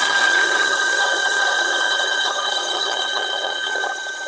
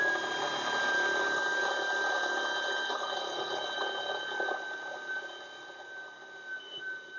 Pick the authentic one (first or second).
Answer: second